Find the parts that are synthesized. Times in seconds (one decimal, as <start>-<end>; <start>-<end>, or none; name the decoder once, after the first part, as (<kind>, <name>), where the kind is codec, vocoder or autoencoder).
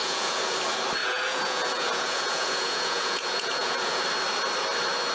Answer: 0.0-0.6 (vocoder, Vocos); 1.0-4.0